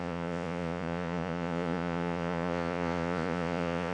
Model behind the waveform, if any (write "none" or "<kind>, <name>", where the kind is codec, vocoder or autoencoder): vocoder, Vocos